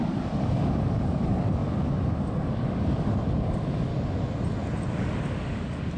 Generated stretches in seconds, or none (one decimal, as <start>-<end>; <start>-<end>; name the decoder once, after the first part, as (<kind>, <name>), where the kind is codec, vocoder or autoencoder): 0.0-3.9 (codec, DAC); 4.9-6.0